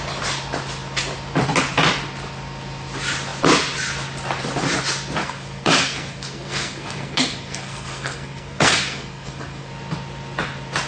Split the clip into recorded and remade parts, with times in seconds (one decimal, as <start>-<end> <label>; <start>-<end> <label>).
0.0-5.2 recorded; 5.2-9.7 remade; 9.7-10.9 recorded